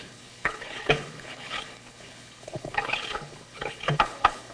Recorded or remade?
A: remade